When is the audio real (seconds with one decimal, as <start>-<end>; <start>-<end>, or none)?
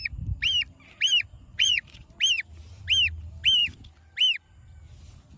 0.0-1.3; 2.1-5.4